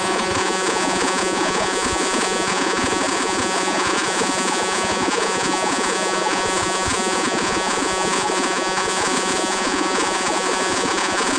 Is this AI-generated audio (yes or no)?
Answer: yes